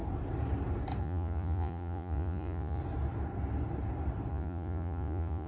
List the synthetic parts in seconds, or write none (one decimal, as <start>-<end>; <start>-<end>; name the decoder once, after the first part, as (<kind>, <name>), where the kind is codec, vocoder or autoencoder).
1.0-2.8 (vocoder, Vocos); 4.3-5.5